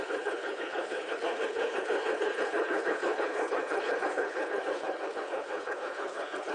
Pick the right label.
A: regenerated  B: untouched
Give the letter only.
A